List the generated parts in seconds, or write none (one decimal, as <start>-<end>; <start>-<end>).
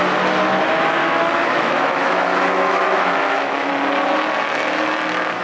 1.0-3.7